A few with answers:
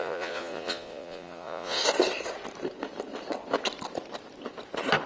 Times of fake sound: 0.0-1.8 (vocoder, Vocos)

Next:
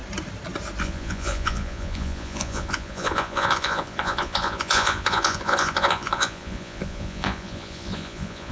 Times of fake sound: 0.8-8.5 (vocoder, Vocos)

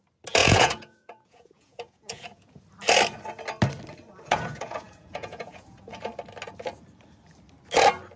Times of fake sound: 0.4-2.6 (vocoder, Vocos); 4.1-6.1

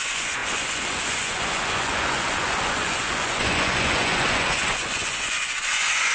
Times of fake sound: 0.0-6.1 (vocoder, Vocos)

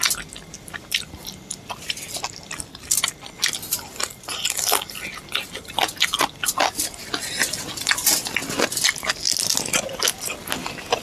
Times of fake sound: none